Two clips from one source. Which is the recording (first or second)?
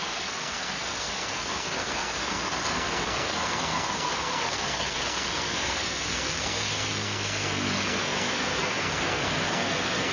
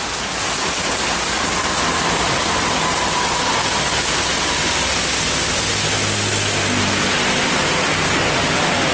second